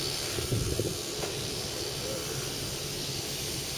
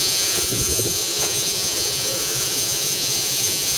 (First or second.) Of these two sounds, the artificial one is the second